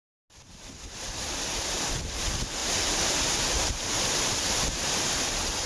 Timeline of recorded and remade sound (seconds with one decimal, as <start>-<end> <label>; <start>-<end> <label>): 0.0-2.6 recorded; 2.6-5.1 remade; 5.1-5.7 recorded